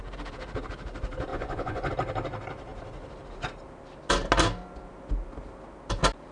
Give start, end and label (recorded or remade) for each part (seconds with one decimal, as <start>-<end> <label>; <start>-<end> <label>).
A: 0.0-1.3 recorded; 1.3-1.9 remade; 1.9-6.3 recorded